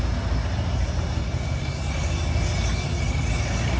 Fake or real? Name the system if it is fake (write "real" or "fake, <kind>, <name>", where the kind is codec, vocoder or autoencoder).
real